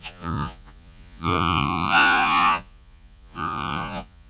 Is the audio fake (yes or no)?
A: yes